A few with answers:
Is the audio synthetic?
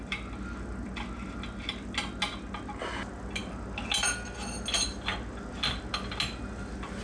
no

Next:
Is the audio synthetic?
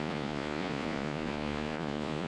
yes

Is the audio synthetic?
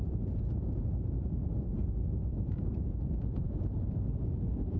yes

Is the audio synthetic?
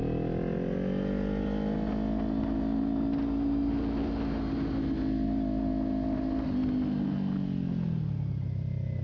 no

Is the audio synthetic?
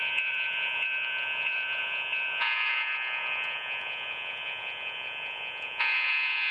yes